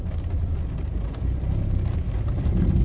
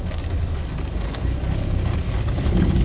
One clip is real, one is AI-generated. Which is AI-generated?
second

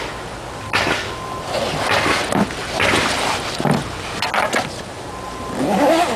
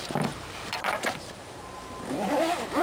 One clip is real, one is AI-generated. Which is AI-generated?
second